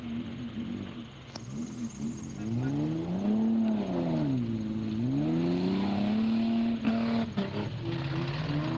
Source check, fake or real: real